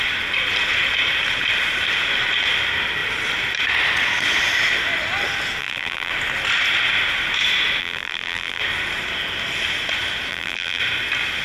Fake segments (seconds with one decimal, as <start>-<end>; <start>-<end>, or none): 5.6-6.1; 7.8-8.6; 10.3-10.8